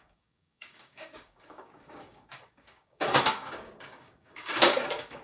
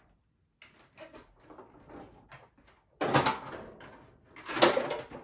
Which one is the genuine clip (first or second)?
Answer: second